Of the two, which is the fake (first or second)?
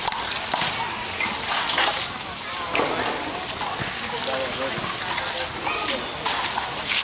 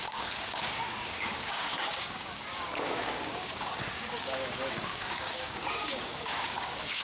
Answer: second